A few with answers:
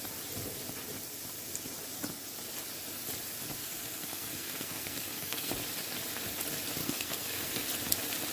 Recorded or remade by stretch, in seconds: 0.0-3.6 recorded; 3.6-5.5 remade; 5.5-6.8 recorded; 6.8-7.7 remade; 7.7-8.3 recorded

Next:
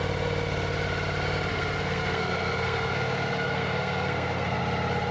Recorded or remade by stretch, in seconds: 0.0-1.5 recorded; 1.5-4.6 remade; 4.6-5.1 recorded

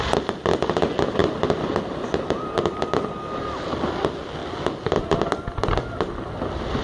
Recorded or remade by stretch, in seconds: 0.0-6.8 recorded